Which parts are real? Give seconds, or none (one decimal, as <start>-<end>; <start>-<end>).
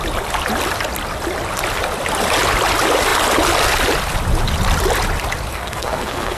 0.0-5.5